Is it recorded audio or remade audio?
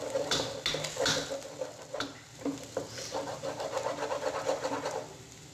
recorded